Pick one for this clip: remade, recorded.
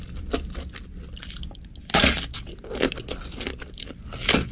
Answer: recorded